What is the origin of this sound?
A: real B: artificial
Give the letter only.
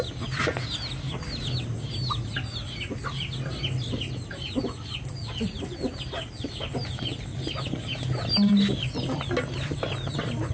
A